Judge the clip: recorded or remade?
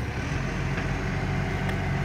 recorded